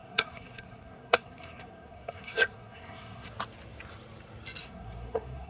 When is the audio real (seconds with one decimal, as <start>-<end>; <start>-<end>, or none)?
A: 3.3-4.6